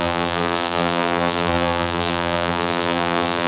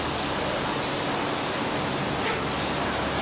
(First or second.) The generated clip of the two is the first